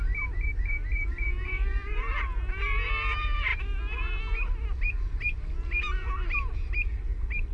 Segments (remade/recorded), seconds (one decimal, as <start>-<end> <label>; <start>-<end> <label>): 0.0-7.5 recorded